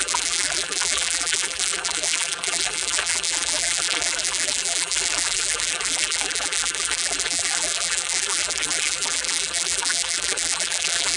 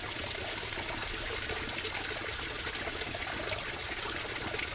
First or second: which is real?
second